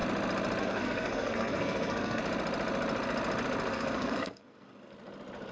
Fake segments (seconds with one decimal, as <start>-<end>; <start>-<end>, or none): 0.6-2.2; 3.7-4.9